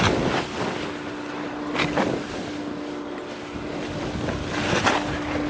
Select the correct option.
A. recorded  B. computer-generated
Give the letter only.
A